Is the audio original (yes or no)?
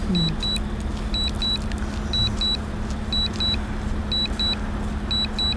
yes